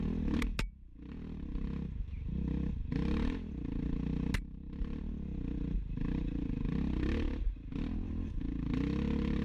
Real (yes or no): yes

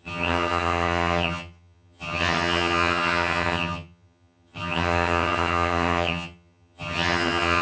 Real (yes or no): no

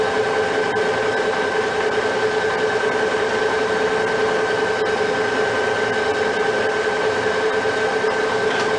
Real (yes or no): yes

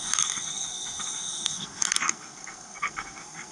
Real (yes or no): no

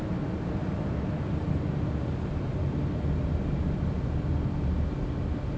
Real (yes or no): yes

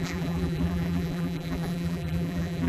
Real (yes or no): no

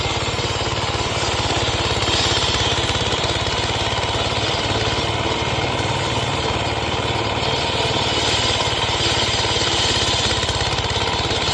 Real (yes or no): no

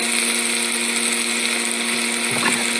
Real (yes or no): yes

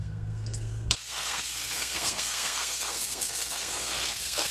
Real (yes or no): no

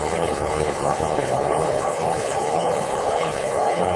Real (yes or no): no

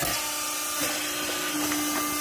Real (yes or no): yes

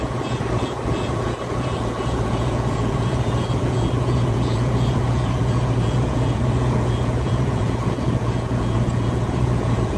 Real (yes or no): no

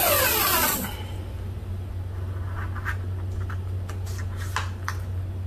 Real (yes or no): yes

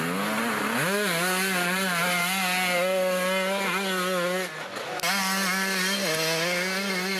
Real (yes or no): yes